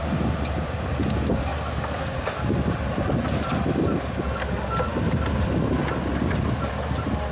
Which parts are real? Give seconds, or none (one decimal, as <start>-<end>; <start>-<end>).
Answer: 0.0-7.3